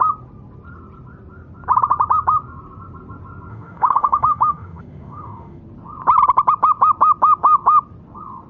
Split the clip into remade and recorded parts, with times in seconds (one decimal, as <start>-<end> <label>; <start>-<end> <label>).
0.0-3.5 recorded; 3.5-5.6 remade; 5.6-8.5 recorded